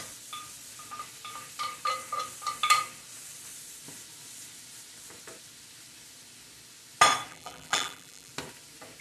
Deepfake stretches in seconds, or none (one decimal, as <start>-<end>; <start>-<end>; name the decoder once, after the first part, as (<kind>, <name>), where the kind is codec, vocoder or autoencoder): 7.3-8.3 (vocoder, BigVGAN v2)